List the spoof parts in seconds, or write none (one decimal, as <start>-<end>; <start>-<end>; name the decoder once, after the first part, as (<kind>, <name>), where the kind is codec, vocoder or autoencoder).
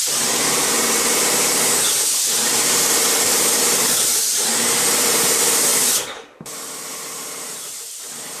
0.0-5.7 (vocoder, BigVGAN v2); 6.9-8.4